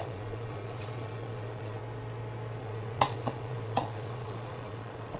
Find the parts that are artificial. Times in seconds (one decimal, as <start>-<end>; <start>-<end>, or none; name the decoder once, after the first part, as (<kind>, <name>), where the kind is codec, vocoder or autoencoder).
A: 0.0-1.8 (vocoder, Vocos); 2.6-5.2